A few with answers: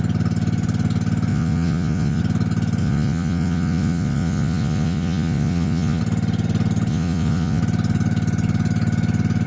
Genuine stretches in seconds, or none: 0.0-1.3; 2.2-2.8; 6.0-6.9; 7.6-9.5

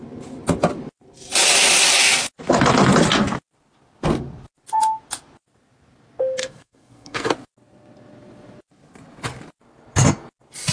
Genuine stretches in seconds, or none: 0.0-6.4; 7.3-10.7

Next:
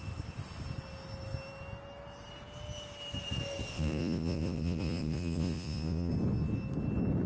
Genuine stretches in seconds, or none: 0.0-3.7; 6.1-7.3

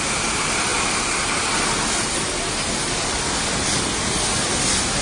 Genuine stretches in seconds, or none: 0.0-5.0

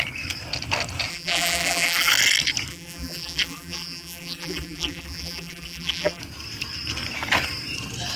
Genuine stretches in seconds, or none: 0.0-1.1; 2.1-2.7; 6.2-8.2